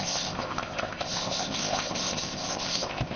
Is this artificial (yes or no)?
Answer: yes